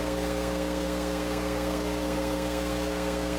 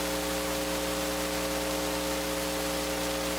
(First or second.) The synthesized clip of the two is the first